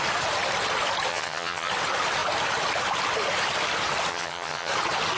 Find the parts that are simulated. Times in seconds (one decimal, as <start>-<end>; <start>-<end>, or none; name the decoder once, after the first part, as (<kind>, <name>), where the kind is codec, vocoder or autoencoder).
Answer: 1.1-1.7 (vocoder, HiFi-GAN); 4.1-4.7

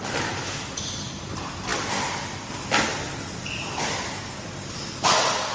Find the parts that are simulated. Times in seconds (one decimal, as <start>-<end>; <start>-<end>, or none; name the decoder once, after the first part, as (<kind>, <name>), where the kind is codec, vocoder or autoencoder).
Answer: none

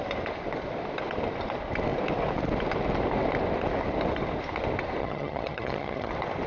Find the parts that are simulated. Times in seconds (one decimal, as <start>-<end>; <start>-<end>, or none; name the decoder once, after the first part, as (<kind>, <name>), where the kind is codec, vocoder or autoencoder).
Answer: 5.0-6.1 (vocoder, HiFi-GAN)

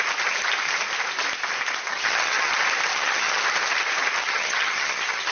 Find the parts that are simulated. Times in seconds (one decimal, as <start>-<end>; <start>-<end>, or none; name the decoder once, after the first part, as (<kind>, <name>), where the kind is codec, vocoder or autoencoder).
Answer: 1.9-2.5 (vocoder, HiFi-GAN); 2.9-3.4; 4.2-5.3

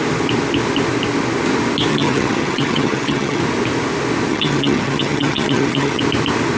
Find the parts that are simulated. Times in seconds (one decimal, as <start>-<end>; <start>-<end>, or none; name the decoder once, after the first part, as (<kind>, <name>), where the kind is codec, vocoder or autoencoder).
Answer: 1.9-3.4 (vocoder, HiFi-GAN); 4.3-6.0